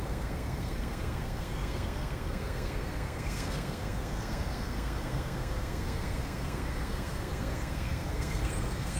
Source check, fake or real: fake